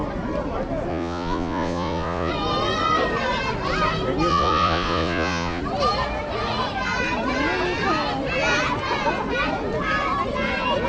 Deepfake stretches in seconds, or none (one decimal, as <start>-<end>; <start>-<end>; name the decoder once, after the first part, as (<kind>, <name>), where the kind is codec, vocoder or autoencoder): 0.9-2.3 (vocoder, Vocos); 4.3-5.6